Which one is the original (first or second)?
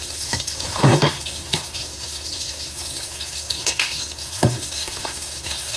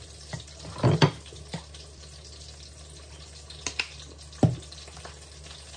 second